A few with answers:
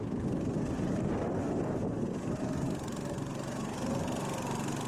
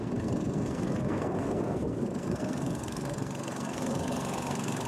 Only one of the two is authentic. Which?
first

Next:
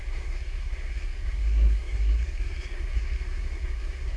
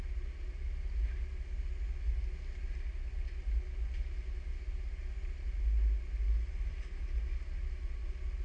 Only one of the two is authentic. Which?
second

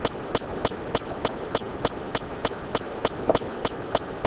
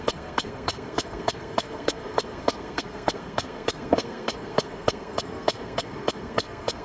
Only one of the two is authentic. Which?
first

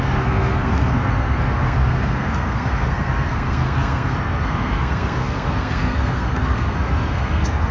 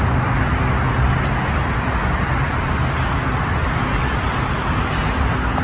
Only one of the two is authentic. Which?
second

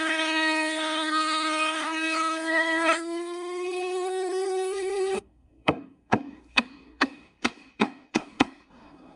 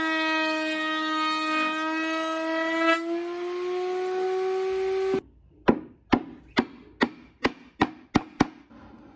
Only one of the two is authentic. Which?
second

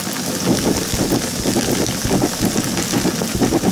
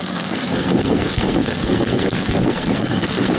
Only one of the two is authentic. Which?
first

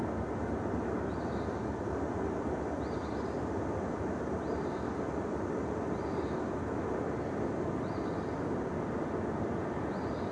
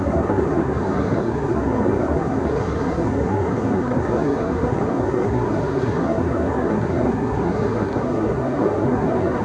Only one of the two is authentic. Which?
first